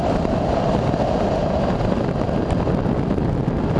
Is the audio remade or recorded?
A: remade